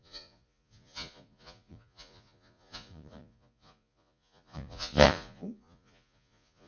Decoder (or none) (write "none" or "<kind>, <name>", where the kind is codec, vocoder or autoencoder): vocoder, Vocos